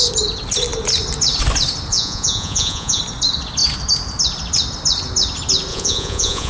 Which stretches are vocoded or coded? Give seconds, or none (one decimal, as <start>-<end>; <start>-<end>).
1.9-3.0; 5.7-6.5